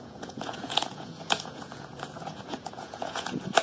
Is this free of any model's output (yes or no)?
no